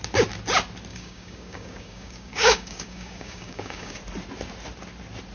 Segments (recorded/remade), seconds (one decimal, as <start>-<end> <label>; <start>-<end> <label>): 0.0-0.9 recorded; 0.9-4.0 remade; 4.0-5.3 recorded

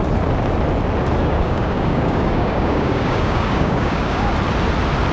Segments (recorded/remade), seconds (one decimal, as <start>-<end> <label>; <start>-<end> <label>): 0.0-1.2 recorded; 1.2-4.3 remade; 4.3-5.1 recorded

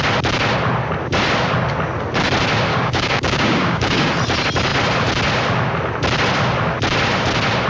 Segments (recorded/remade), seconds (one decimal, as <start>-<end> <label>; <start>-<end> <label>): 0.0-2.7 recorded; 2.7-4.1 remade; 4.1-7.7 recorded

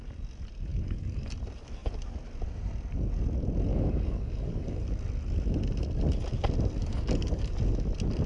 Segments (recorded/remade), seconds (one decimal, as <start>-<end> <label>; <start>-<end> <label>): 0.0-0.7 recorded; 0.7-1.3 remade; 1.3-3.7 recorded; 3.7-5.0 remade; 5.0-6.8 recorded; 6.8-7.5 remade; 7.5-8.3 recorded

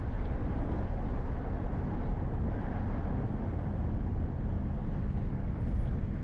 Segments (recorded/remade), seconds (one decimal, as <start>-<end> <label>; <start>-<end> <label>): 0.0-4.8 recorded; 4.8-5.6 remade; 5.6-6.2 recorded